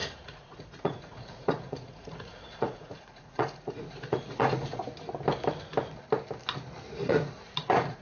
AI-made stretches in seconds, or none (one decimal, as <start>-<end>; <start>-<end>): 0.0-4.8; 7.0-8.0